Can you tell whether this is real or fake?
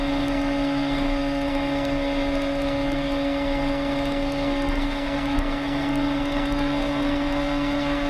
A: fake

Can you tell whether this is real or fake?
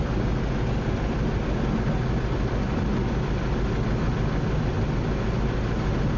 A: real